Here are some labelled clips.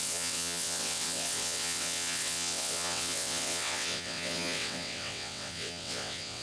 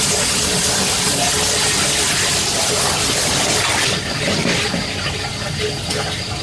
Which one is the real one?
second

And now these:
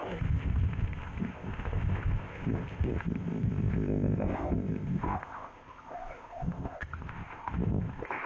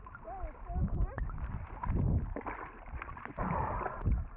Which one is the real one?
second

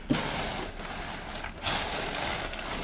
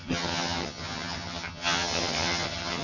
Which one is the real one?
first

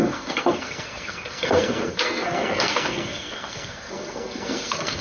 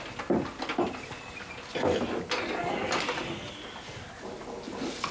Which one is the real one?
second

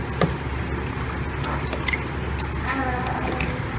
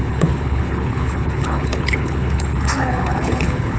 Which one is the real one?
first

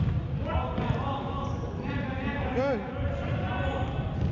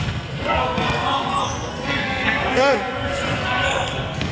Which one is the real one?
first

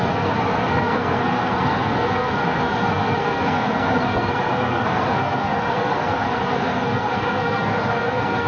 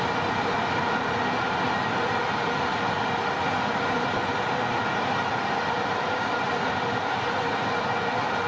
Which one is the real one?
second